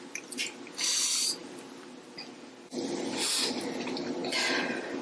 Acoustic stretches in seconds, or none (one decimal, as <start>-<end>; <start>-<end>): 0.0-5.0